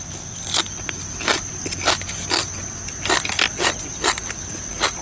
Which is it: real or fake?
real